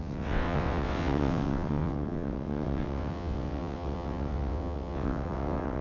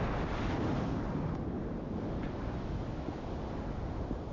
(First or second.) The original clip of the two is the second